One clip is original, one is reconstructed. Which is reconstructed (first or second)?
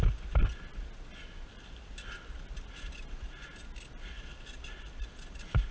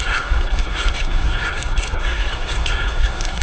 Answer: second